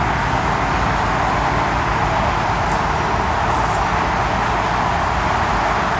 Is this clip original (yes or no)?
yes